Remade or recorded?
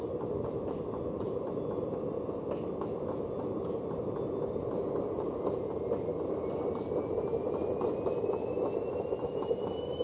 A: recorded